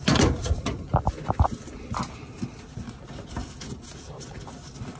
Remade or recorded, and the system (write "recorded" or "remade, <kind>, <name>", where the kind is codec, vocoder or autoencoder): recorded